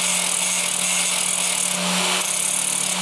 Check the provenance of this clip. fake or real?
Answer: real